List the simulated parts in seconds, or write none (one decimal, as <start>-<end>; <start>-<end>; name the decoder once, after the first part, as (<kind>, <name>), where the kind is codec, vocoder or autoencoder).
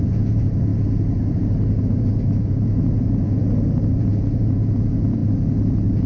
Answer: 0.0-0.7 (vocoder, Vocos); 1.8-3.4; 4.0-5.2